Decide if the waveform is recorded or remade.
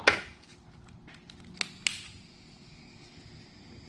recorded